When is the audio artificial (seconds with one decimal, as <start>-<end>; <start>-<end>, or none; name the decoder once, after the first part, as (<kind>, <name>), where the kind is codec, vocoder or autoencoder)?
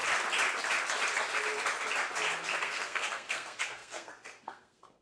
2.6-5.0 (codec, SNAC)